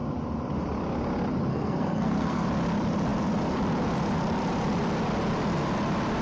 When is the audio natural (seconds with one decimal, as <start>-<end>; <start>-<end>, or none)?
0.0-1.5; 2.5-6.2